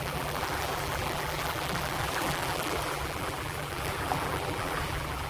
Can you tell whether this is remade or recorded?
remade